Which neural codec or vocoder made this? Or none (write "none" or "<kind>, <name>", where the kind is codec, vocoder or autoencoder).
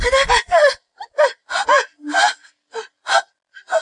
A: none